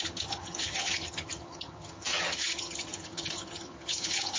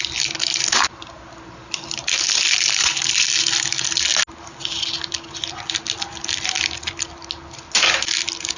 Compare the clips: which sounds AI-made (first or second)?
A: first